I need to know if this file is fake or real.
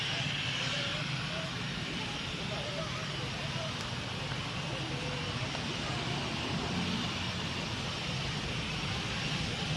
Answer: real